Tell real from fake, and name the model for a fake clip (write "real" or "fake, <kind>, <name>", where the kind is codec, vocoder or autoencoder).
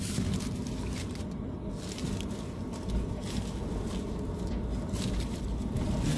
real